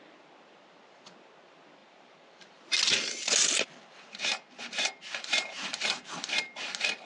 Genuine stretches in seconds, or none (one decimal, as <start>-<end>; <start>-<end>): 0.0-1.8; 6.1-7.1